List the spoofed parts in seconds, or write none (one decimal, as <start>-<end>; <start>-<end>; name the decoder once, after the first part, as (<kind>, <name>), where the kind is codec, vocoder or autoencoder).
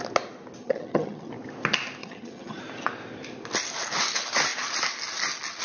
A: 0.6-1.3 (vocoder, HiFi-GAN); 2.0-2.6